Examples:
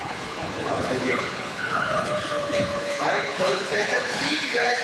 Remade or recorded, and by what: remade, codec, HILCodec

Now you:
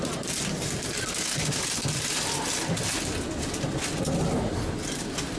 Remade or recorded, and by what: recorded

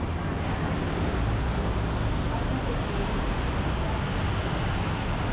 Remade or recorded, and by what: recorded